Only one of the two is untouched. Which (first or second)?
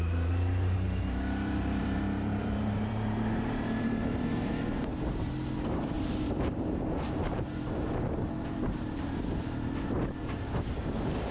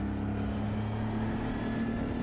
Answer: second